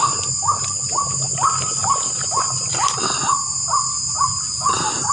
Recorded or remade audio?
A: recorded